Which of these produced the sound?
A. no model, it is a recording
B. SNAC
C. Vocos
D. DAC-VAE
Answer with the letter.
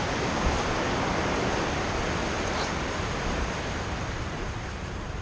A